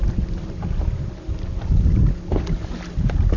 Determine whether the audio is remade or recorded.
recorded